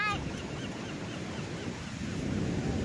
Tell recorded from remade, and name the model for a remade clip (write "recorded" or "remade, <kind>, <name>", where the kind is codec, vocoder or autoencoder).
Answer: recorded